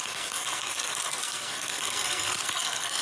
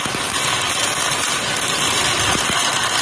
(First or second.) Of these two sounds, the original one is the second